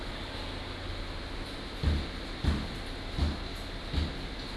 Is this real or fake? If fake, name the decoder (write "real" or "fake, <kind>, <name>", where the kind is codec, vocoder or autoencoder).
real